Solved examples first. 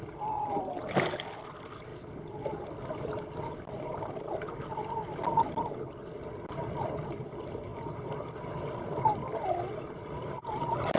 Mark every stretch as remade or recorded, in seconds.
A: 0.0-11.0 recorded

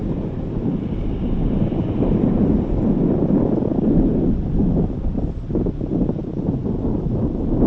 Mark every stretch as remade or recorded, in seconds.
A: 0.0-7.7 recorded

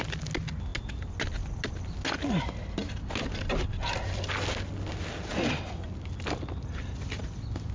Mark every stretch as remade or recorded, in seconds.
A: 0.0-7.7 recorded

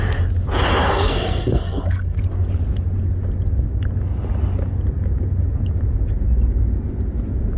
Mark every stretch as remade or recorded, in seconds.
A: 0.0-0.8 recorded; 0.8-2.2 remade; 2.2-7.6 recorded

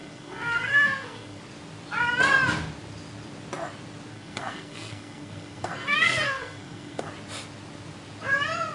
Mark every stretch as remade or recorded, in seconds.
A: 0.0-1.4 remade; 1.4-4.1 recorded; 4.1-7.1 remade; 7.1-8.7 recorded

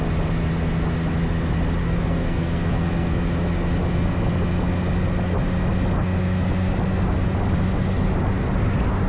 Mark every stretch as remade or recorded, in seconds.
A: 0.0-1.8 recorded; 1.8-3.1 remade; 3.1-9.1 recorded

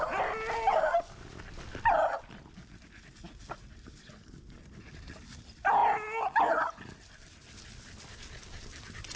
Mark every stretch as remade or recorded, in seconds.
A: 0.0-9.2 recorded